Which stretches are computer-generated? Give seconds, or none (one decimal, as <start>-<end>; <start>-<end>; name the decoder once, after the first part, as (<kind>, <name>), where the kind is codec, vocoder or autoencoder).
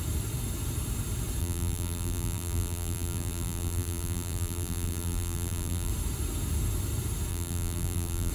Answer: 1.4-5.9 (vocoder, BigVGAN v2); 7.3-8.3